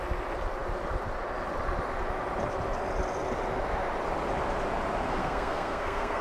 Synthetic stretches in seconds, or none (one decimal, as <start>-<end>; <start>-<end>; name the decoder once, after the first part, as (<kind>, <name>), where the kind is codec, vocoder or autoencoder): 5.2-6.2 (codec, SNAC)

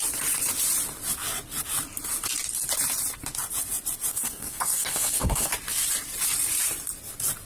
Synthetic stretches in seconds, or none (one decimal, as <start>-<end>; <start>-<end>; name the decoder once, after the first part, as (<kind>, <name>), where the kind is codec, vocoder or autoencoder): 4.1-5.5 (codec, SNAC)

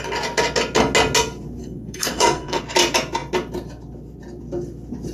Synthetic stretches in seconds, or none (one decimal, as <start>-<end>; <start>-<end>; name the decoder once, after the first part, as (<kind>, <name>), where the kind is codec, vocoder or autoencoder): 1.6-2.6 (codec, SNAC)

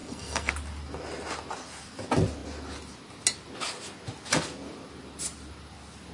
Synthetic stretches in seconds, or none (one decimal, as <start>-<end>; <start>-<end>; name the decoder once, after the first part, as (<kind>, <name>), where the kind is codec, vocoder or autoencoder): 0.0-0.5 (codec, SNAC)